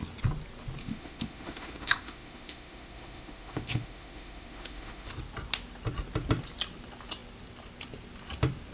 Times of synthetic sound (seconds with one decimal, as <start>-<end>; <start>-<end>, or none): 0.8-5.1